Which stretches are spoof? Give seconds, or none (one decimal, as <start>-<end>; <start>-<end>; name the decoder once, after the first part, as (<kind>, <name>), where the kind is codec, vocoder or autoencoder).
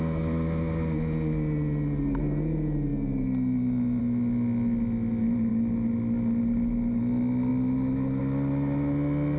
none